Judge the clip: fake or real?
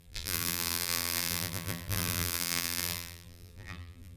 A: fake